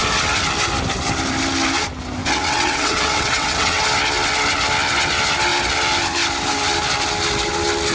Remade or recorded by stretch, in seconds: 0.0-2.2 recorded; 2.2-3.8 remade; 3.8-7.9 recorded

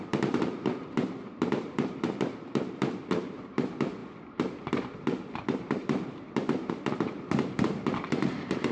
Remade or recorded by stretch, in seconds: 0.0-8.7 remade

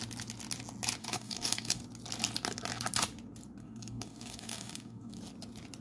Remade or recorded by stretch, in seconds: 0.0-1.0 recorded; 1.0-1.8 remade; 1.8-3.6 recorded; 3.6-5.2 remade; 5.2-5.8 recorded

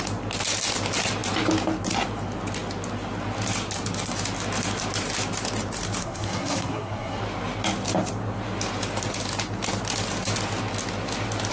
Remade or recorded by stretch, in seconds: 0.0-6.0 recorded; 6.0-7.2 remade; 7.2-11.5 recorded

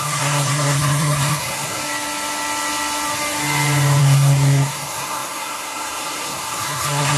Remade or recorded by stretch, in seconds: 0.0-1.8 remade; 1.8-4.0 recorded; 4.0-7.2 remade

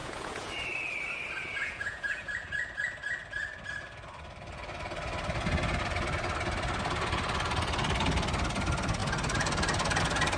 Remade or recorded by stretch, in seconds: 0.0-0.5 remade; 0.5-1.5 recorded; 1.5-2.3 remade; 2.3-10.4 recorded